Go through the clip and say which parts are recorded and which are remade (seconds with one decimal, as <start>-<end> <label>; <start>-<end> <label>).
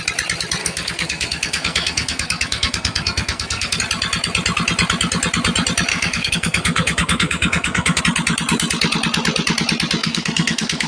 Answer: 0.0-0.6 recorded; 0.6-3.8 remade; 3.8-5.9 recorded; 5.9-8.0 remade; 8.0-10.0 recorded; 10.0-10.9 remade